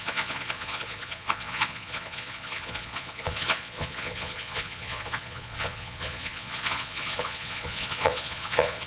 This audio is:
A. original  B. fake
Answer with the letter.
B